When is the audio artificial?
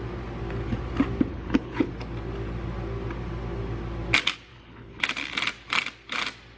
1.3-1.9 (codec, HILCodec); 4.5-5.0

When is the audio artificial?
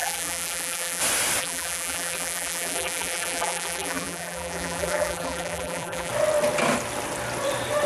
0.0-1.0 (vocoder, BigVGAN v2); 1.4-6.1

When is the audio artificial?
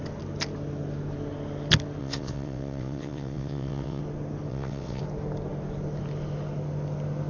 2.0-4.0 (vocoder, WaveNeXt); 4.5-5.0